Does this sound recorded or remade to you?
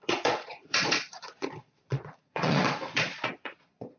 remade